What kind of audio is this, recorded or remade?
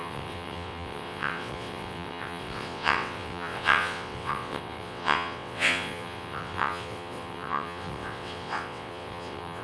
remade